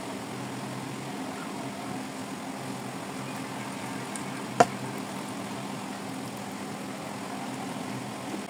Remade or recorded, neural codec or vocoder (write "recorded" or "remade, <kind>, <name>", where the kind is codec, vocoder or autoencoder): recorded